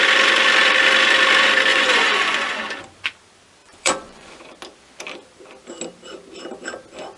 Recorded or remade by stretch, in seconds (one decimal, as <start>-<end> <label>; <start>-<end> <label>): 0.0-1.7 recorded; 1.7-2.6 remade; 2.6-3.6 recorded; 3.6-4.4 remade; 4.4-7.2 recorded